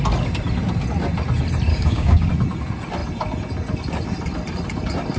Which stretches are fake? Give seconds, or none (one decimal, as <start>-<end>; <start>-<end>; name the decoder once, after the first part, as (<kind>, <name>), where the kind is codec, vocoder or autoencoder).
1.7-2.3 (codec, DAC)

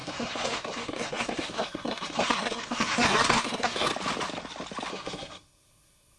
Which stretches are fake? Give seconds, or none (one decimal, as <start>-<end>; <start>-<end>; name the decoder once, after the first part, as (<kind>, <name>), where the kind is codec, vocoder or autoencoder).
0.0-3.9 (codec, SNAC); 4.9-6.2

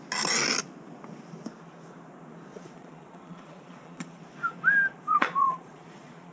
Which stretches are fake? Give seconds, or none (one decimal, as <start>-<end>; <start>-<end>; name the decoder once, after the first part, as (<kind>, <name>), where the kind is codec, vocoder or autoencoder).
2.5-4.2 (vocoder, Vocos); 5.1-6.3